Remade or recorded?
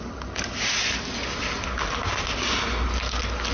recorded